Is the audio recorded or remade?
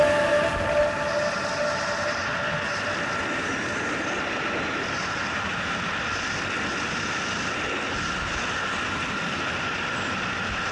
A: recorded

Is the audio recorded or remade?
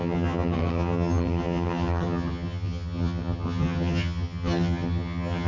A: remade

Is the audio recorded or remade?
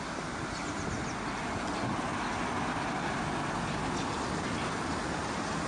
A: recorded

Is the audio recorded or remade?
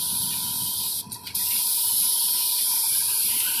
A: recorded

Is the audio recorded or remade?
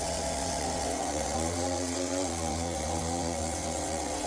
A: remade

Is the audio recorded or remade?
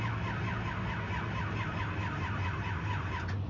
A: recorded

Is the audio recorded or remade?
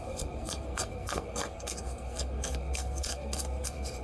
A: remade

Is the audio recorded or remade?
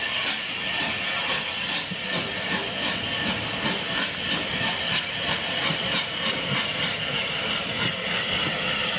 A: recorded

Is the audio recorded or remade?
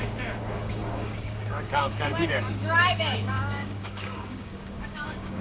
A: remade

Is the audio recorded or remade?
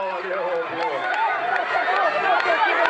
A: recorded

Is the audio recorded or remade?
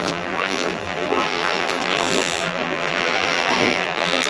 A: remade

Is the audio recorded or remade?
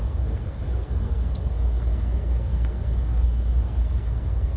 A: remade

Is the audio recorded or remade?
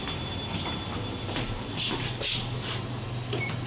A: recorded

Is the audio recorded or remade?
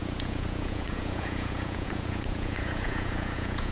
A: remade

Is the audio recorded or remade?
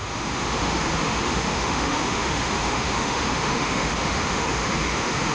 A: remade